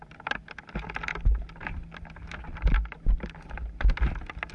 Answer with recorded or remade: recorded